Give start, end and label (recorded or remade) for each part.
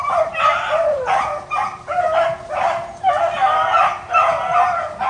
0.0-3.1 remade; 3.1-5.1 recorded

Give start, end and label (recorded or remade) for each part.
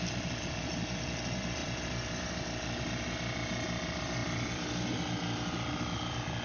0.0-1.6 recorded; 1.6-2.4 remade; 2.4-4.2 recorded; 4.2-4.8 remade; 4.8-6.4 recorded